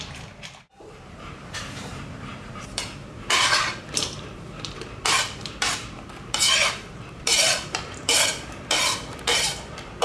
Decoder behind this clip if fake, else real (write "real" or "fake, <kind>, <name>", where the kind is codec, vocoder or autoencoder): fake, vocoder, BigVGAN v2